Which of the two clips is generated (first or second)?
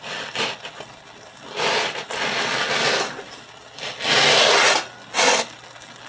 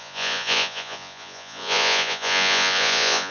second